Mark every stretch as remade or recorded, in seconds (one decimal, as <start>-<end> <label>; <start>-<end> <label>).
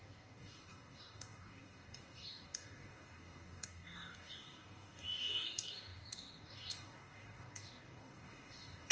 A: 0.0-8.9 remade